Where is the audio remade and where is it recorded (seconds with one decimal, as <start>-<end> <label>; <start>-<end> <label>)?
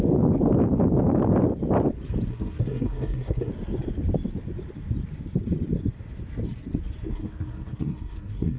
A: 0.0-2.3 recorded; 2.3-3.5 remade; 3.5-7.1 recorded; 7.1-8.6 remade